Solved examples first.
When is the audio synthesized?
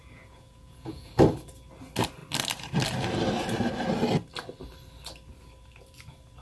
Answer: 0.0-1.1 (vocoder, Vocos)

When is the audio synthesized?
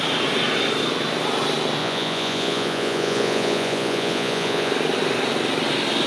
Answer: 1.8-4.7 (vocoder, Vocos)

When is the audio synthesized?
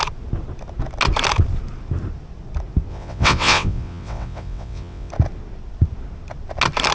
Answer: 2.9-5.1 (vocoder, WaveNeXt)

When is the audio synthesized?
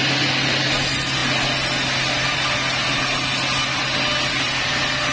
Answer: none